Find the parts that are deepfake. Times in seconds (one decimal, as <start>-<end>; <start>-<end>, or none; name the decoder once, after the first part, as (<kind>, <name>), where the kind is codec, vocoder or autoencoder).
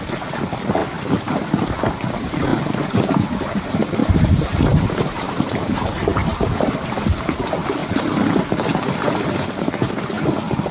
2.5-3.1 (vocoder, BigVGAN v2); 4.0-6.5; 7.8-8.4